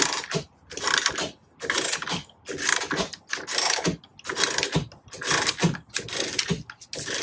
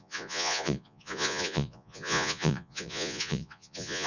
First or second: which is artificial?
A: second